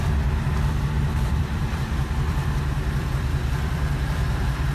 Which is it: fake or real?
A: fake